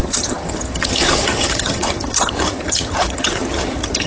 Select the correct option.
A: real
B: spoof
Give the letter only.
B